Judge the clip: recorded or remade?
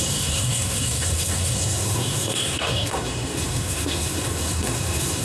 remade